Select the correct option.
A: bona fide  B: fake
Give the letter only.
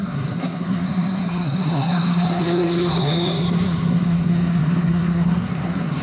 B